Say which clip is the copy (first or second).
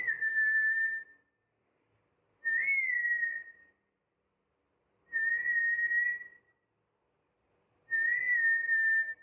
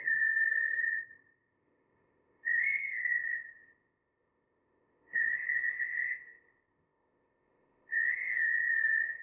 second